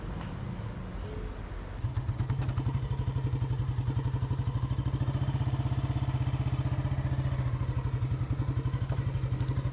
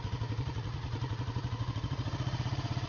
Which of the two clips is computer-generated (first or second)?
second